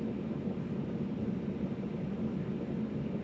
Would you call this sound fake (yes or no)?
no